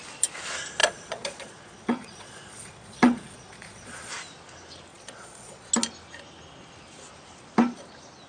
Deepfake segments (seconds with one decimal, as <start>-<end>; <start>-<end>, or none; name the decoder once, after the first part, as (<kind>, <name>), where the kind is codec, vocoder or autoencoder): 0.8-4.1 (vocoder, Vocos); 4.9-5.7